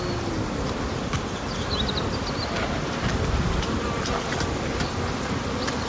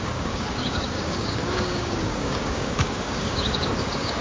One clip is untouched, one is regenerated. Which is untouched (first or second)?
first